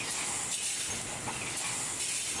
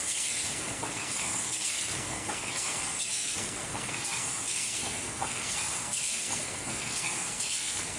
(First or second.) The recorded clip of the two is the first